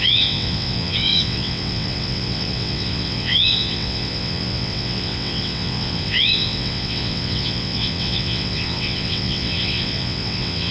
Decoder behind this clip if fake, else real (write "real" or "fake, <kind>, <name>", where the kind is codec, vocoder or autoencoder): fake, vocoder, WaveNeXt